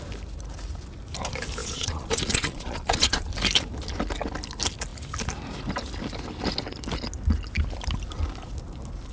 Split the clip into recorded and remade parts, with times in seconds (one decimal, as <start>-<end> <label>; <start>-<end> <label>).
0.0-1.6 recorded; 1.6-3.3 remade; 3.3-9.1 recorded